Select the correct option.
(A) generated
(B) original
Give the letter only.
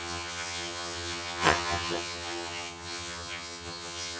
A